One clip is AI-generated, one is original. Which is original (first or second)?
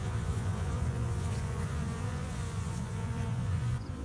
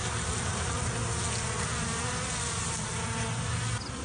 second